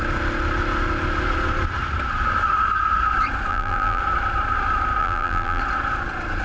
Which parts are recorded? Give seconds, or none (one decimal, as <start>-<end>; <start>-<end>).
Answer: 0.0-3.5; 4.0-5.0; 5.6-6.4

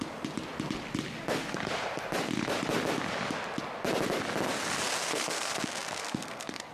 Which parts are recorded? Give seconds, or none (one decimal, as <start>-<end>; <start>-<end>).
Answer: 0.0-5.1; 5.6-6.0

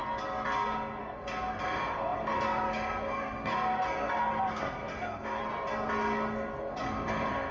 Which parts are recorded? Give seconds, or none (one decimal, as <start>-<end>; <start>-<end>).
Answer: 0.0-1.0; 5.4-6.6